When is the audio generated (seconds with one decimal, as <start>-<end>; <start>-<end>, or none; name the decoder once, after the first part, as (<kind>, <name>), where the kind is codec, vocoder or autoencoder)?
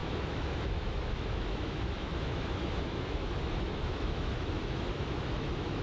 0.0-5.8 (autoencoder, DAC-VAE)